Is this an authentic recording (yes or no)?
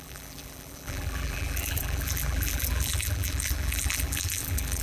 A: no